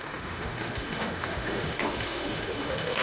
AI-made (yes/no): yes